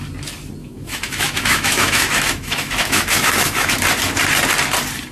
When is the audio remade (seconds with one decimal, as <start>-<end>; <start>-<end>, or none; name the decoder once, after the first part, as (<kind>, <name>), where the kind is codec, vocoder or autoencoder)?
0.6-3.7 (autoencoder, DAC-VAE)